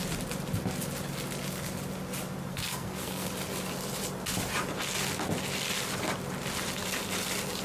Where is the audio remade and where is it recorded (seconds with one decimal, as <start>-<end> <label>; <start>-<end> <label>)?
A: 0.0-2.5 recorded; 2.5-3.3 remade; 3.3-7.6 recorded